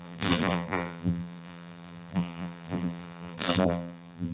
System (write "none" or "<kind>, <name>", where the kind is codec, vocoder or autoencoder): vocoder, BigVGAN v2